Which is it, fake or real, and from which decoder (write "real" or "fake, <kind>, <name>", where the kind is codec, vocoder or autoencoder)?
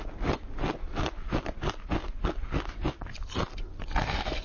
real